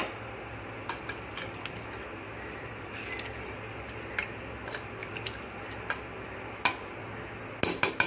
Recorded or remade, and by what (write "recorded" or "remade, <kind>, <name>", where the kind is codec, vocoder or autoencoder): recorded